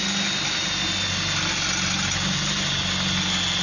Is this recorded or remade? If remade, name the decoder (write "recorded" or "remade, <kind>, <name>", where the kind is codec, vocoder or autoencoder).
recorded